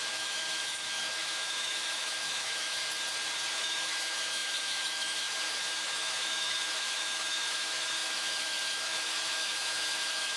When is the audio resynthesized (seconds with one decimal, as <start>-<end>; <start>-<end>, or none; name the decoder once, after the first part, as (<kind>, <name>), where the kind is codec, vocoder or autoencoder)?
0.0-2.8 (autoencoder, DAC-VAE); 3.5-10.4

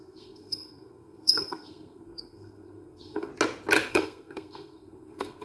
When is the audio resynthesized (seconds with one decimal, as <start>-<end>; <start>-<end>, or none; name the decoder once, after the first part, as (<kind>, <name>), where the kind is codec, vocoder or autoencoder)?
0.0-3.3 (codec, SNAC); 3.9-5.4

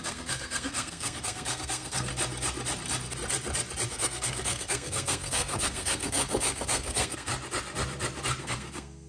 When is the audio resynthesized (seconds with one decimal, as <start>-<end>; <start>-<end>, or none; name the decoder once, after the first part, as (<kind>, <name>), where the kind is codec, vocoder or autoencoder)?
0.0-2.1 (codec, SNAC); 3.9-7.3; 8.4-9.1

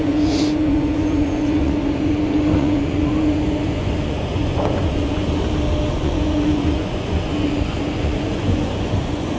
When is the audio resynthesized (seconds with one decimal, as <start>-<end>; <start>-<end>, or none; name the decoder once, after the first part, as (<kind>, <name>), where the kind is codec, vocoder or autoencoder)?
0.0-5.2 (vocoder, Vocos); 5.9-9.4

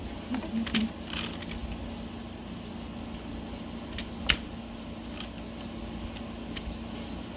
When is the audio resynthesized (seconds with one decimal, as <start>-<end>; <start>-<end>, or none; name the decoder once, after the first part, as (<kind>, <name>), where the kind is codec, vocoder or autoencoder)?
none